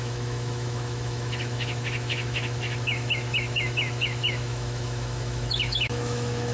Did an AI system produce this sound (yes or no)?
yes